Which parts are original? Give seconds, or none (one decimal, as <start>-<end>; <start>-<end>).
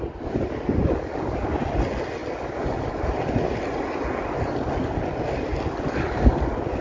0.0-6.8